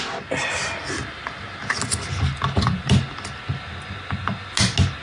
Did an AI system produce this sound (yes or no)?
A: no